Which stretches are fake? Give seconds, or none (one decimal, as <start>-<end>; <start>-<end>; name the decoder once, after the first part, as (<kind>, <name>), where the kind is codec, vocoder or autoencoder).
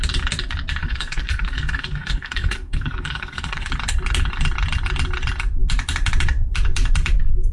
0.8-3.7 (codec, SNAC)